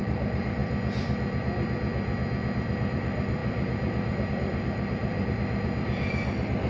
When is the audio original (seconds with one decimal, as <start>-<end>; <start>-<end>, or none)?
0.6-2.7